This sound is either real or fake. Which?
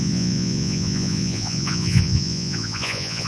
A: fake